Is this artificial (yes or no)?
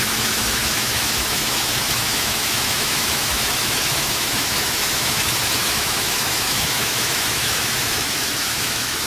yes